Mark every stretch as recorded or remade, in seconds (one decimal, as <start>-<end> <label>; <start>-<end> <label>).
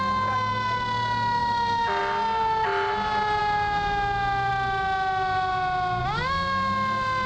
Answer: 0.0-7.3 recorded